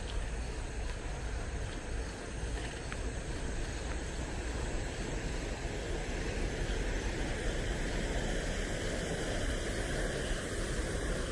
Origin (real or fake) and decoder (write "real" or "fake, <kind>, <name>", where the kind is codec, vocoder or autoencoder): real